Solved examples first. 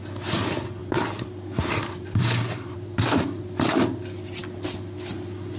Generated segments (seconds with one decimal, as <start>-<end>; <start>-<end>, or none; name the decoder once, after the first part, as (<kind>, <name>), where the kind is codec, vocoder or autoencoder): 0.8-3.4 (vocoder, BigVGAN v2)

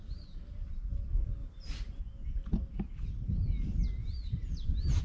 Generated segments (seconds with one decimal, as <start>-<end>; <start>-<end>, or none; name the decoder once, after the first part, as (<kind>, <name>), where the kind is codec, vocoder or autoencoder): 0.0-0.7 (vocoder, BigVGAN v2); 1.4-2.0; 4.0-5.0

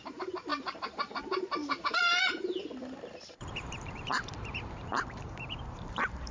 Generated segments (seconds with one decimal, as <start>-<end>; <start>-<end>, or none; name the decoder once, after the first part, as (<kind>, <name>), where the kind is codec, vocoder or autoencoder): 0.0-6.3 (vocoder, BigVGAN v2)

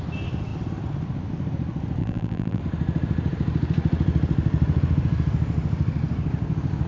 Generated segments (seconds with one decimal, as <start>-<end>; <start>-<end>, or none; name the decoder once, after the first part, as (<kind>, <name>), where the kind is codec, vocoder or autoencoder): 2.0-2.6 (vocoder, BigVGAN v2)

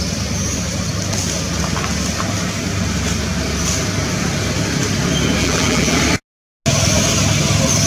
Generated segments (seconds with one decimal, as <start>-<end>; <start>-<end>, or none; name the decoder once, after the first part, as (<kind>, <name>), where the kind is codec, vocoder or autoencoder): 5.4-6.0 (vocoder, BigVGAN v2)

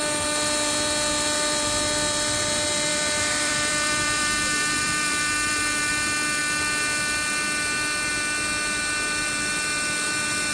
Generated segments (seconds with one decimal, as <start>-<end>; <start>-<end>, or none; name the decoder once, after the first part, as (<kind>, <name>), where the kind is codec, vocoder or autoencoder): 2.9-5.9 (vocoder, BigVGAN v2)